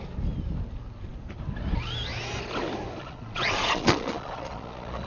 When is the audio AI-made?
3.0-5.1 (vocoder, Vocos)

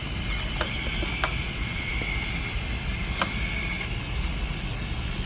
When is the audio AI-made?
1.4-1.9 (vocoder, Vocos)

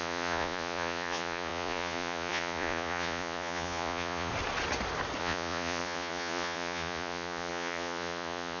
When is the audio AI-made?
0.0-4.3 (vocoder, Vocos); 5.2-8.6

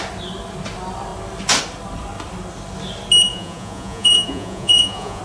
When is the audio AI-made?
3.3-5.2 (vocoder, Vocos)

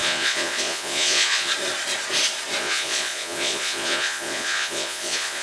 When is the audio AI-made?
0.0-1.5 (vocoder, Vocos); 2.6-5.4